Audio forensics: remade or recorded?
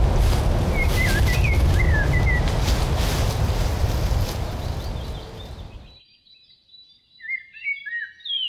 recorded